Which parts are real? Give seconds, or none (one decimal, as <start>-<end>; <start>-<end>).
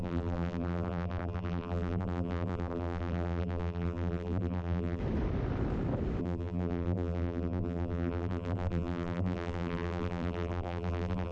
5.0-6.2